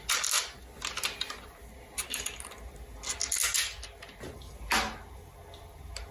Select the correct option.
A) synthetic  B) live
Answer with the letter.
B